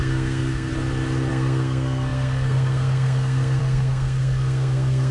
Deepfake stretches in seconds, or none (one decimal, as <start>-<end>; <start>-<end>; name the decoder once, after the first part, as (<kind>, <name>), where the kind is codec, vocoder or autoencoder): 0.0-0.7 (codec, SNAC); 1.3-5.1